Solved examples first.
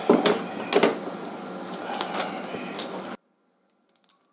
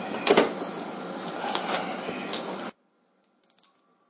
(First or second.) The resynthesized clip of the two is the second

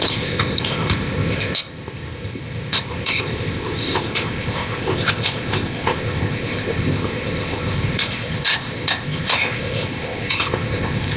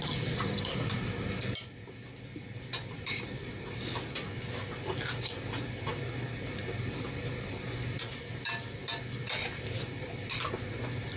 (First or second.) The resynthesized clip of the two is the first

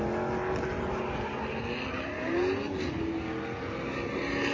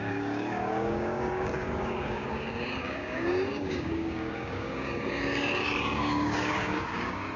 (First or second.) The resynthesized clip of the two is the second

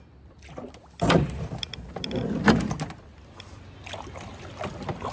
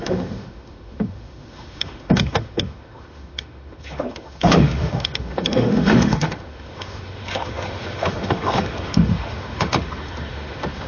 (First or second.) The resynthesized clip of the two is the second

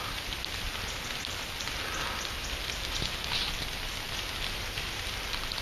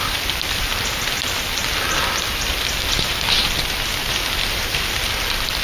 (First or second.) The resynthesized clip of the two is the second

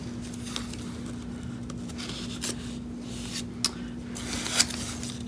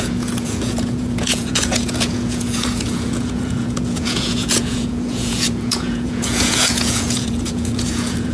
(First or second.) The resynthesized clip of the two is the second